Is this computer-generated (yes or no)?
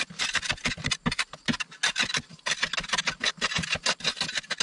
no